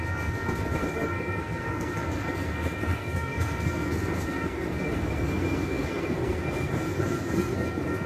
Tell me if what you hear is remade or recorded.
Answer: remade